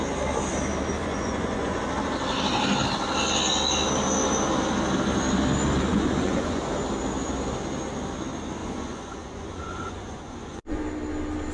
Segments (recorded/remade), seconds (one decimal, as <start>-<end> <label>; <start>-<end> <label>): 0.0-1.0 recorded; 1.0-1.8 remade; 1.8-5.9 recorded; 5.9-6.6 remade; 6.6-8.6 recorded; 8.6-10.8 remade; 10.8-11.5 recorded